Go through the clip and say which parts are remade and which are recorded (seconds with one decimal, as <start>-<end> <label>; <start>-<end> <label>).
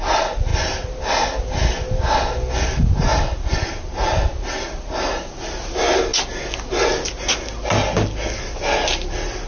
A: 0.0-9.5 recorded